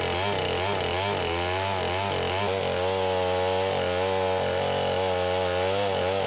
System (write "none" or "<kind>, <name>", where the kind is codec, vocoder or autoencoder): none